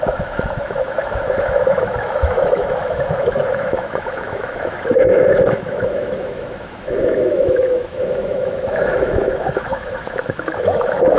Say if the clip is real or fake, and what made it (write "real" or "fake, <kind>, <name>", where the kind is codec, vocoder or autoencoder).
fake, autoencoder, DAC-VAE